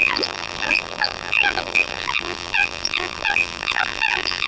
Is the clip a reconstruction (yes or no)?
yes